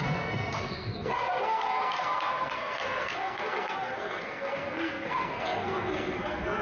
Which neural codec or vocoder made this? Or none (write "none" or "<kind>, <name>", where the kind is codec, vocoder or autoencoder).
codec, SNAC